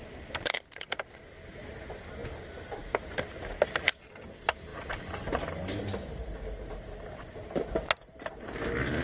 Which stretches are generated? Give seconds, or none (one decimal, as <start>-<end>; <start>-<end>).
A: none